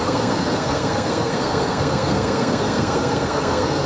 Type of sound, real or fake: fake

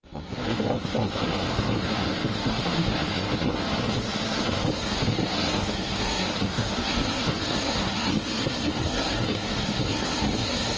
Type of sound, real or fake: fake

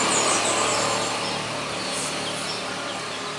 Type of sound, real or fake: real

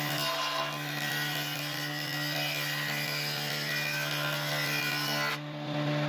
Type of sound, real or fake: real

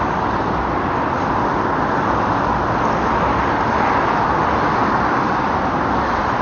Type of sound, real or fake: real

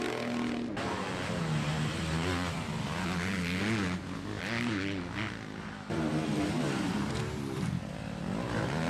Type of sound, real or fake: real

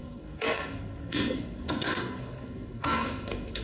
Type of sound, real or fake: fake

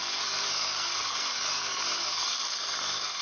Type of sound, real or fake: fake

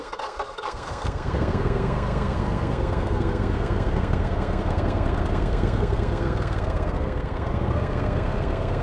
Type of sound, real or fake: fake